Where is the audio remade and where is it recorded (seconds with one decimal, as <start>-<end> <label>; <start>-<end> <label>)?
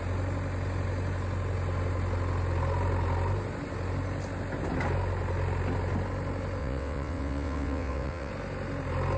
0.0-6.6 recorded; 6.6-8.3 remade; 8.3-9.2 recorded